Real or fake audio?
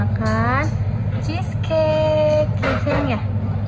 real